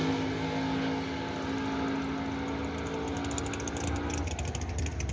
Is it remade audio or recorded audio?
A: recorded